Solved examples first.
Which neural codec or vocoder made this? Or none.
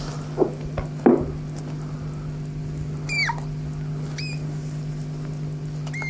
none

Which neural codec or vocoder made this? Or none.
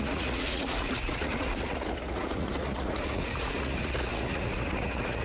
vocoder, Vocos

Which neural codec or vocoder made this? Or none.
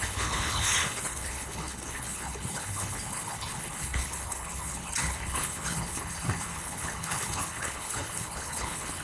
codec, HILCodec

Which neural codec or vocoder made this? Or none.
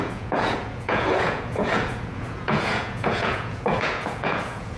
vocoder, Vocos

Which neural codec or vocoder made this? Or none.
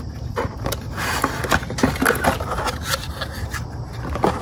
none